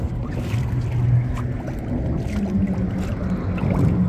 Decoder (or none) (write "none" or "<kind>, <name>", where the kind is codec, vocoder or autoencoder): none